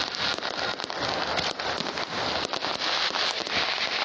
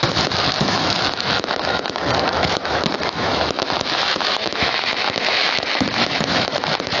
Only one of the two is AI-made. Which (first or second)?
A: second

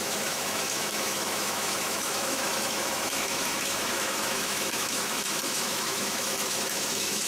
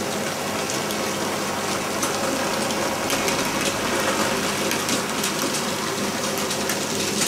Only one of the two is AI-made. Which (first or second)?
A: first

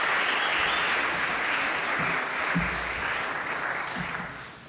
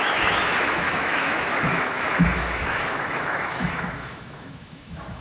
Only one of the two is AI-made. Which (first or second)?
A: second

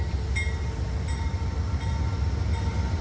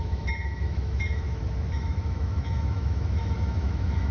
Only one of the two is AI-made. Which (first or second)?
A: second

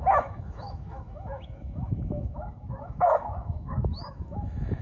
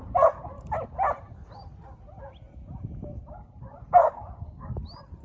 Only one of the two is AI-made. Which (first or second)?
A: first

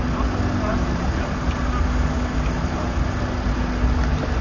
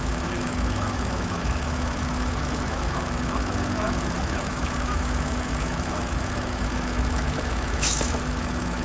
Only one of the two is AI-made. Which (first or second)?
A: second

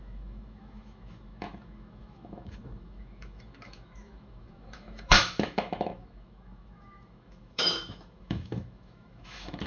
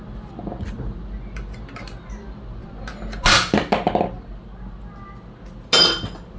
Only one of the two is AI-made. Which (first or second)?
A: first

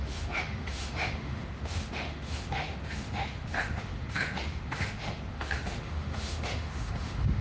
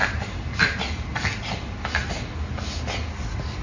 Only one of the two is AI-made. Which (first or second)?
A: first